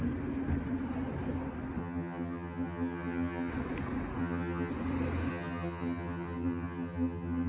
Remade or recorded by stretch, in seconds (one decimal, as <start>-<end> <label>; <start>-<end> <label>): 0.0-1.8 recorded; 1.8-3.5 remade; 3.5-4.2 recorded; 4.2-4.7 remade; 4.7-5.3 recorded; 5.3-7.5 remade